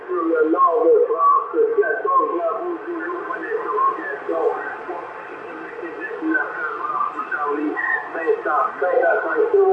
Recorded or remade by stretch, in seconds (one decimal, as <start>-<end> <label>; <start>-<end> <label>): 0.0-9.7 recorded